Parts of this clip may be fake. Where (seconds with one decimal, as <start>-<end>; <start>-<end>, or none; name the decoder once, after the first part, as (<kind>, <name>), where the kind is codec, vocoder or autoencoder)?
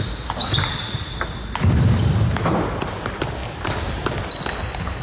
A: none